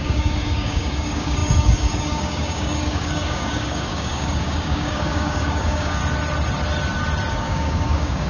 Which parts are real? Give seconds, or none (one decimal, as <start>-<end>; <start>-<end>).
6.0-7.3